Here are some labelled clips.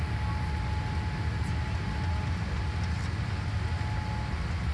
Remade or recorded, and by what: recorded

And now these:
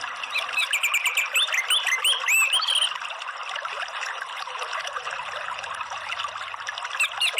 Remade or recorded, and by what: recorded